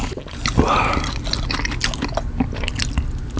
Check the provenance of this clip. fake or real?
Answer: real